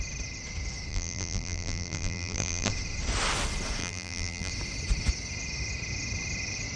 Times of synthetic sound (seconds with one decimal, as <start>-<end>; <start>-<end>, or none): 0.9-2.7; 3.8-4.5